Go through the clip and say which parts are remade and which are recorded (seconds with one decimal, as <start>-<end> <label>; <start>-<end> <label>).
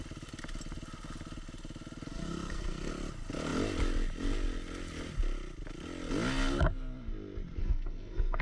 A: 0.0-2.1 recorded; 2.1-2.9 remade; 2.9-7.6 recorded; 7.6-8.4 remade